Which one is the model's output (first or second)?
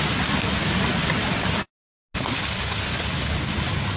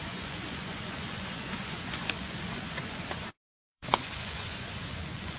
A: second